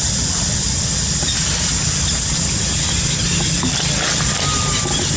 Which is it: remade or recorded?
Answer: recorded